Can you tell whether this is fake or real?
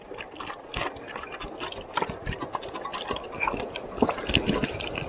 real